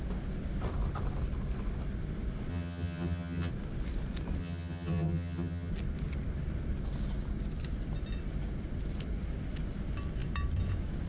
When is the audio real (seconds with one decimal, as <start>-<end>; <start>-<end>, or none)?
0.0-2.5; 3.5-4.4; 5.7-11.1